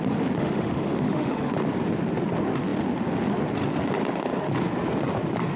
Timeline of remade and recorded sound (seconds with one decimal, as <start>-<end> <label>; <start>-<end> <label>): 0.0-0.4 recorded; 0.4-1.5 remade; 1.5-5.6 recorded